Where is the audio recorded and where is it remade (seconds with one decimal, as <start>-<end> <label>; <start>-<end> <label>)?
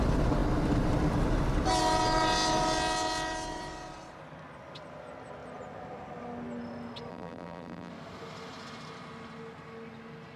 0.0-7.1 recorded; 7.1-7.9 remade; 7.9-10.4 recorded